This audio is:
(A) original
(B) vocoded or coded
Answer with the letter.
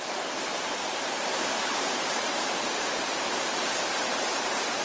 B